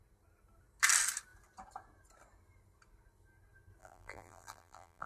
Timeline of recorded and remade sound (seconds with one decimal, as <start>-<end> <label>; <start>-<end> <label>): 0.0-3.8 recorded; 3.8-5.1 remade